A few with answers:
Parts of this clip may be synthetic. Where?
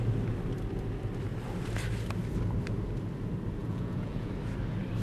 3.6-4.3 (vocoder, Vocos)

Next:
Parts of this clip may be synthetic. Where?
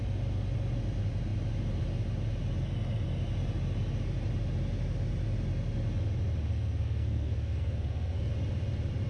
6.5-8.3 (codec, SNAC)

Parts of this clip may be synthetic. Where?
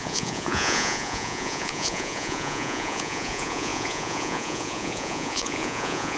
0.0-6.2 (vocoder, Vocos)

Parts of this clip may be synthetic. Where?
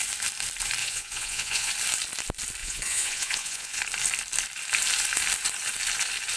0.8-1.7 (vocoder, Vocos); 2.6-3.8